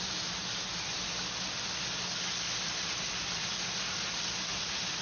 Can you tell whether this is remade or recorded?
recorded